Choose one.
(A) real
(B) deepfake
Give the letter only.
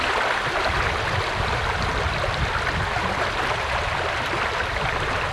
A